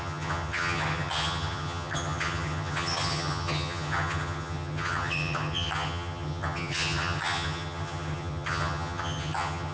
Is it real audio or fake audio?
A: fake